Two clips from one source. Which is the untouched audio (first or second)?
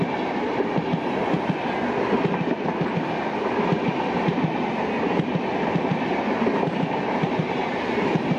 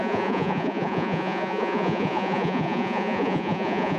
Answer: first